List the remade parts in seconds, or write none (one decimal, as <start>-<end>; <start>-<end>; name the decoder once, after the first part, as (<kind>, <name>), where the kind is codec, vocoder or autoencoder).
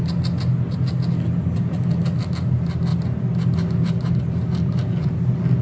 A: none